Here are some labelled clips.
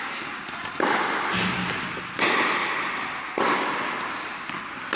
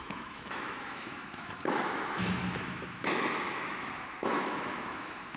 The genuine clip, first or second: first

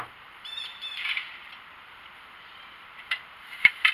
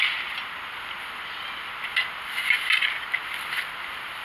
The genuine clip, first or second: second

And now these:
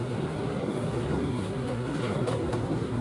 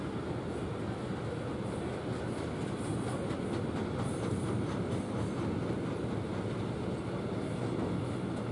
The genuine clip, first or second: second